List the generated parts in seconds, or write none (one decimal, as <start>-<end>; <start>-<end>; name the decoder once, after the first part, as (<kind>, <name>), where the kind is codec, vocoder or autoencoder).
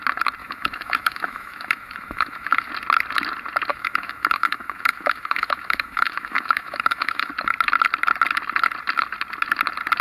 0.4-2.7 (autoencoder, DAC-VAE); 3.7-7.3